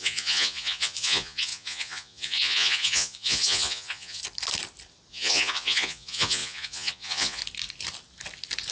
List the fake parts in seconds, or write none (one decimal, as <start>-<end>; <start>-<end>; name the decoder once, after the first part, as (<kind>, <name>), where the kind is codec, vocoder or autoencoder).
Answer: 0.0-4.2 (vocoder, Vocos); 5.1-7.4